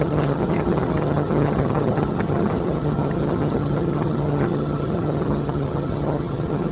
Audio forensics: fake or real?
fake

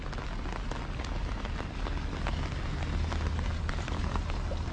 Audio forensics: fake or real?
real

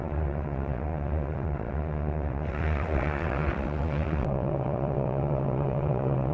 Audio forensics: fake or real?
fake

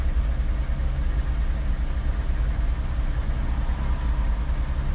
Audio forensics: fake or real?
real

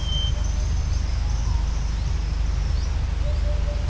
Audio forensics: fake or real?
real